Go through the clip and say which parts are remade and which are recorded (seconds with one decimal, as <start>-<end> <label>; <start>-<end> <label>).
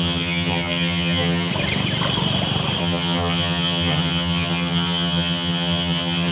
0.0-1.5 remade; 1.5-2.8 recorded; 2.8-6.3 remade